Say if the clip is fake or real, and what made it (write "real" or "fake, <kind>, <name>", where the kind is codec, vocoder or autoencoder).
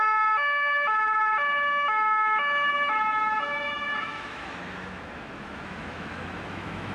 fake, autoencoder, DAC-VAE